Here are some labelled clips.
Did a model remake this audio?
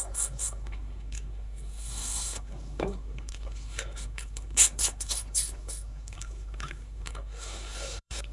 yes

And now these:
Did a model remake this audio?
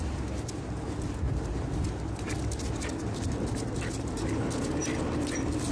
no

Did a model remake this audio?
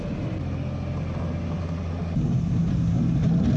no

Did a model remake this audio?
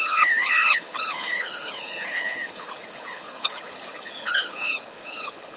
yes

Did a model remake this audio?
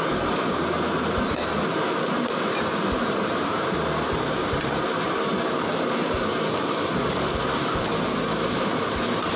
yes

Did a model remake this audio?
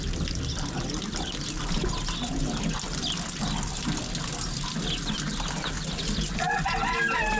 no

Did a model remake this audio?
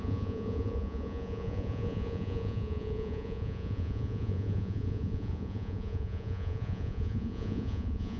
yes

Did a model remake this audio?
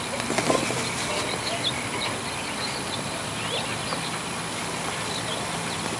no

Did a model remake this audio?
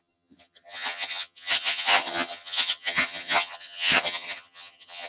yes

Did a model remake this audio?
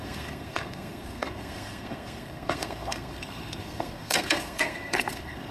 yes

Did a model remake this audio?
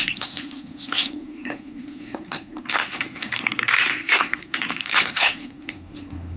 yes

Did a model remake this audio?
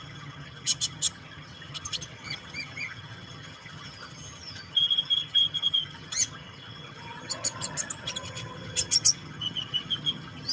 yes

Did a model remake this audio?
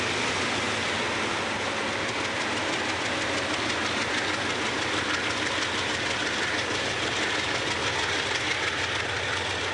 no